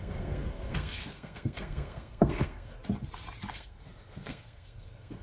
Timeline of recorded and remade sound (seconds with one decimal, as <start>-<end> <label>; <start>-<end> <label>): 0.0-2.7 remade; 2.7-3.5 recorded; 3.5-5.2 remade